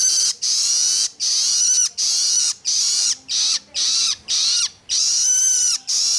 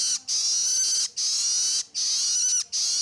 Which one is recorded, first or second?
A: second